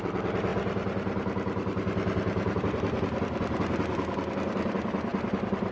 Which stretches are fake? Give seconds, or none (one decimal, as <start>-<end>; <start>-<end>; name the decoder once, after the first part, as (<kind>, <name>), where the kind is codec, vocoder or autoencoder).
none

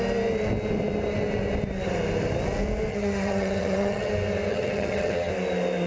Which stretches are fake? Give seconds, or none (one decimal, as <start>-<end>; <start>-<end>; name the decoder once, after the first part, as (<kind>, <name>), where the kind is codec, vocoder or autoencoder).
2.9-4.1 (vocoder, HiFi-GAN); 4.5-5.3